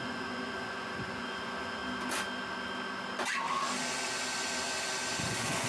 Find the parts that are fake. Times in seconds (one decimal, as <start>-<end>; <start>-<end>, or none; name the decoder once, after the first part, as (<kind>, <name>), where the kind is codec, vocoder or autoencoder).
0.0-1.8 (vocoder, Vocos); 5.2-5.7